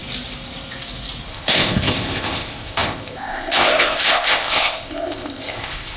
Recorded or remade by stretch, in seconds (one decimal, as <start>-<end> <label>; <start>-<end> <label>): 0.0-1.3 recorded; 1.3-6.0 remade